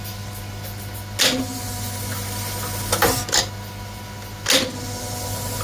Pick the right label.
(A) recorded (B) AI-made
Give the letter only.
A